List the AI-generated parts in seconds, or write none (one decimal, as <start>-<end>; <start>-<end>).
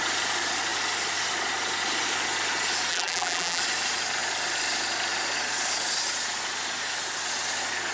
2.9-3.6